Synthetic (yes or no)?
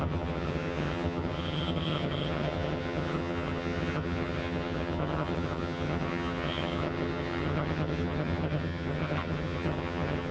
yes